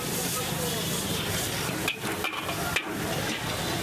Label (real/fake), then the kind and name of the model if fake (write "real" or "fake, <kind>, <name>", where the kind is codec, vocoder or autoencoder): real